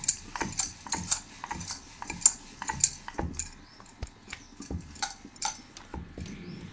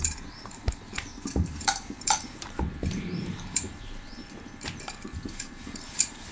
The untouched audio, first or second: first